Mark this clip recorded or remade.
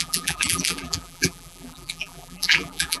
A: remade